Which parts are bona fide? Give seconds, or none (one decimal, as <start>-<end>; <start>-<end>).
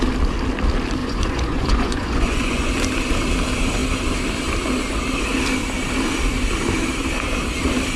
0.0-1.0; 2.7-8.0